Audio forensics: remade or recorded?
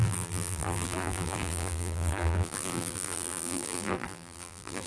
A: remade